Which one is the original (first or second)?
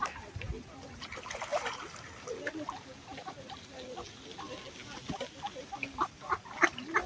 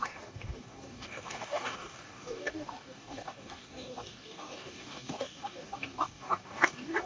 first